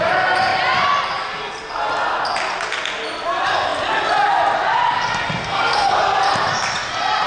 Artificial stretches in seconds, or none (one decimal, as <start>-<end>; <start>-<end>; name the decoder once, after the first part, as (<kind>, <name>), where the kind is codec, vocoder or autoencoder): 5.4-6.0 (codec, SNAC)